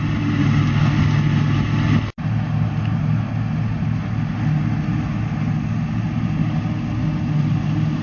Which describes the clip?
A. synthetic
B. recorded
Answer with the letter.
B